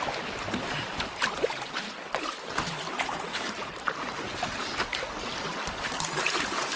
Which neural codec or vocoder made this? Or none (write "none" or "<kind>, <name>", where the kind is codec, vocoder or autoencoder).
none